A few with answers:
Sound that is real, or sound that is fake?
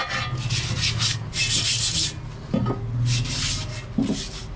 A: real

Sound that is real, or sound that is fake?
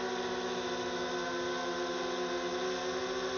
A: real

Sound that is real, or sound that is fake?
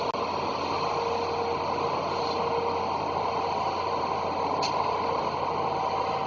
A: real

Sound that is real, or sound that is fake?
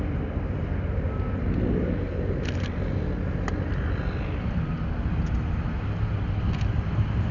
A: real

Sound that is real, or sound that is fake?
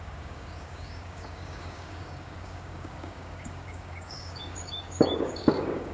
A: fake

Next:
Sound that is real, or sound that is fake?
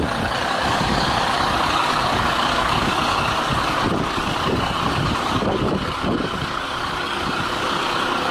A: fake